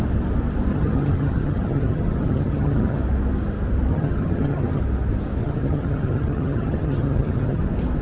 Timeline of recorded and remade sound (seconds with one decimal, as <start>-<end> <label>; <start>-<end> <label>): 0.0-0.7 recorded; 0.7-3.0 remade; 3.0-3.9 recorded; 3.9-4.8 remade; 4.8-5.4 recorded; 5.4-7.6 remade; 7.6-8.0 recorded